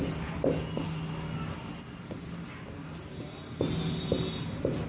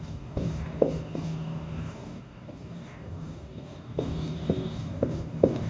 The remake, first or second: second